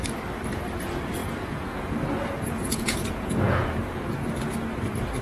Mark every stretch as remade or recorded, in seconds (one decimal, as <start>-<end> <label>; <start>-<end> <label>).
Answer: 0.0-1.2 recorded; 1.2-4.3 remade; 4.3-5.2 recorded